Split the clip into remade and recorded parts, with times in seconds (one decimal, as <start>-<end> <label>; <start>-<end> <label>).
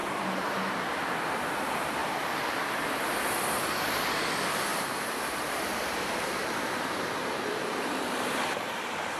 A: 0.0-0.6 remade; 0.6-4.7 recorded; 4.7-9.2 remade